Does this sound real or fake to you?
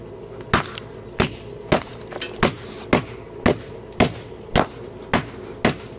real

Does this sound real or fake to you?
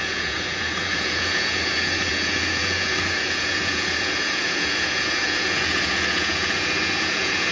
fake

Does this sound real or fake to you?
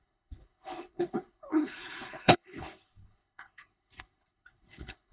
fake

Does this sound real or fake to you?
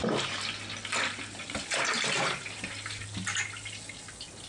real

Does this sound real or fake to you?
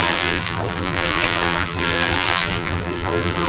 fake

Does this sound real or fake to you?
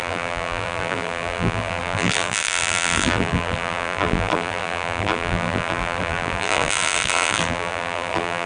fake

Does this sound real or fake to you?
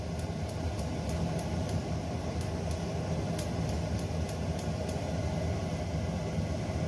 real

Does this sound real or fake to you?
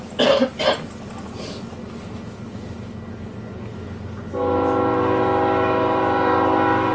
real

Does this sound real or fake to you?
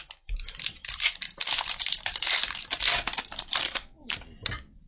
real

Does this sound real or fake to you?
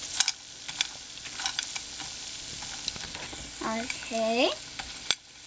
real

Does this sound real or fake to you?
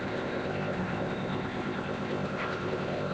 fake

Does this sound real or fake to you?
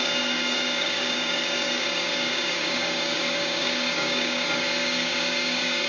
fake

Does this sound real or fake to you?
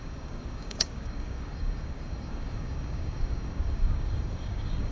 fake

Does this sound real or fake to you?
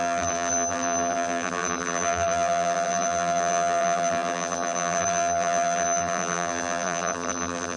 fake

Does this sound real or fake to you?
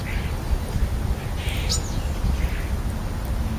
real